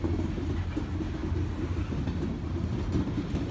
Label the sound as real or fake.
real